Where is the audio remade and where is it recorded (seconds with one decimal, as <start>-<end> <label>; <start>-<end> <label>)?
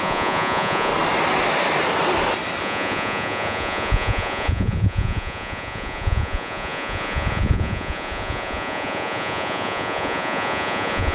0.0-0.9 remade; 0.9-2.6 recorded; 2.6-11.1 remade